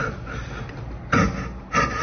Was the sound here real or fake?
real